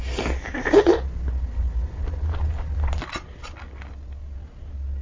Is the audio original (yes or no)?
yes